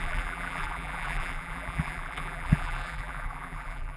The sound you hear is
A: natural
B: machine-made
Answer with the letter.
B